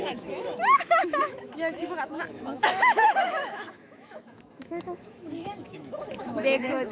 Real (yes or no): no